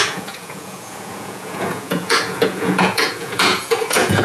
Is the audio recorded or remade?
remade